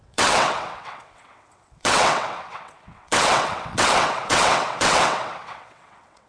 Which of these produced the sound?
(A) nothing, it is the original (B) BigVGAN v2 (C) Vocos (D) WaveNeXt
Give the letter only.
D